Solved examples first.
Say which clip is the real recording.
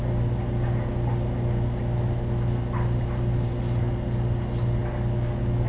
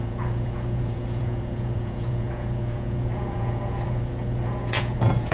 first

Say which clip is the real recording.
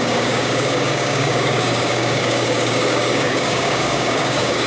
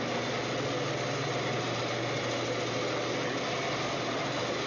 second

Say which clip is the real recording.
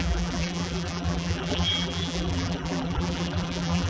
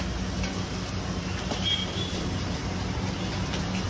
second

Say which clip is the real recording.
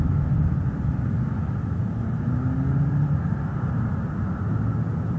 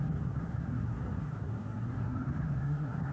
first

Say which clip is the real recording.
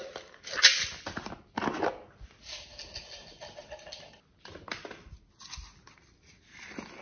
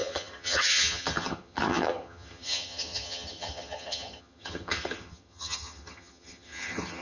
first